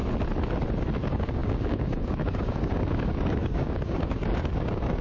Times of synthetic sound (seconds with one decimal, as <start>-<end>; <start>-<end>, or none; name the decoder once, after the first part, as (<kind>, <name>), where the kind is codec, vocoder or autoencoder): 1.0-5.0 (codec, DAC)